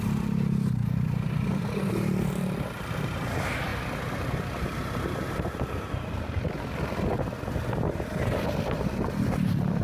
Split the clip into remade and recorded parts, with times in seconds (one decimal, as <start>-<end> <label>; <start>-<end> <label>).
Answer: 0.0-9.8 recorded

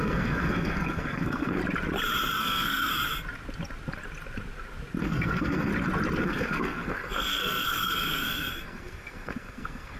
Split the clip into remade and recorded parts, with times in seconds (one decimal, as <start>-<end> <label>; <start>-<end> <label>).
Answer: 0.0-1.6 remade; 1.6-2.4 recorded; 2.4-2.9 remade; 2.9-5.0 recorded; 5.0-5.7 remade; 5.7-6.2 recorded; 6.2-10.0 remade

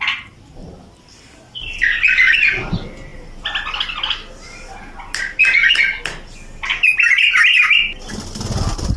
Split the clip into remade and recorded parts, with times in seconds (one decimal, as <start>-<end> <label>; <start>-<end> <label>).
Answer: 0.0-9.0 recorded